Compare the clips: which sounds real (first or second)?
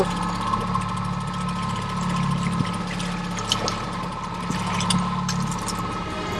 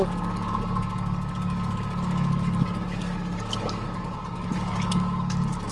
first